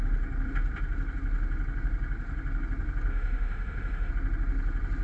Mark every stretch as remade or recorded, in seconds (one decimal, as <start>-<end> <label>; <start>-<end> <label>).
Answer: 0.0-3.1 recorded; 3.1-4.1 remade; 4.1-5.0 recorded